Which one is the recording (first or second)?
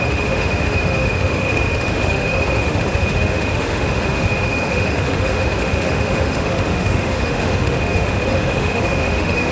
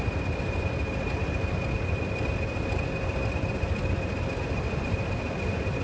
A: second